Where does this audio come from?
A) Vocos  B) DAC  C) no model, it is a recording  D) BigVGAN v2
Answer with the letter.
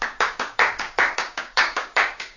B